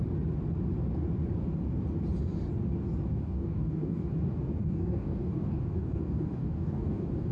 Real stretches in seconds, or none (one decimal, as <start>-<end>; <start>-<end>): 0.0-3.1; 4.1-4.6